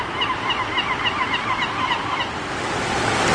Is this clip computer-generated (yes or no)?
no